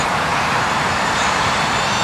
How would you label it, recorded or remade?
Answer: remade